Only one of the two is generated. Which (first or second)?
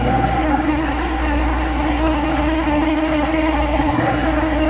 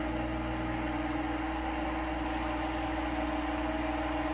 first